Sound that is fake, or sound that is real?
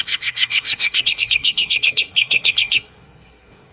fake